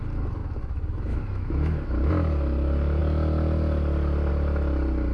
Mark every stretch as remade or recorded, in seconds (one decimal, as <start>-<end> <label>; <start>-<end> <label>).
0.0-0.4 recorded; 0.4-2.1 remade; 2.1-5.1 recorded